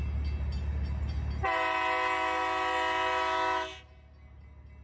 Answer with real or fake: real